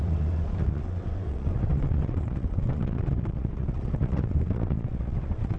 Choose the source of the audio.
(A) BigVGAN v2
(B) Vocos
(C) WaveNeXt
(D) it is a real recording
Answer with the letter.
C